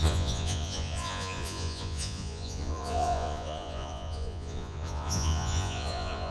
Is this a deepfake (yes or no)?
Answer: yes